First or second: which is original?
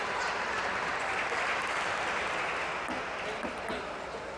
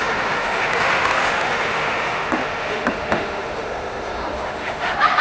first